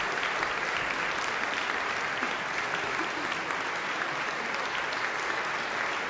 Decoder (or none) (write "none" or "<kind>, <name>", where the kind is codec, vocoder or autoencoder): none